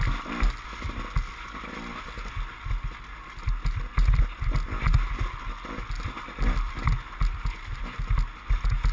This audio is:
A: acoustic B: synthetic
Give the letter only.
A